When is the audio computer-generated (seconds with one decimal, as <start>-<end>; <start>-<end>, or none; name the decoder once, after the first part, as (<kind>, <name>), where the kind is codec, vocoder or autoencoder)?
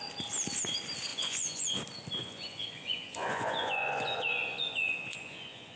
1.1-1.8 (vocoder, Vocos); 2.2-5.8